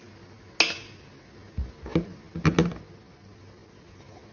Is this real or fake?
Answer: real